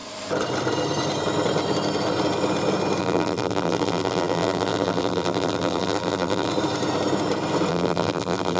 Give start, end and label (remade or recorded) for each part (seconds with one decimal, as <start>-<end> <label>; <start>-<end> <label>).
0.0-3.0 recorded; 3.0-6.5 remade; 6.5-7.7 recorded; 7.7-8.6 remade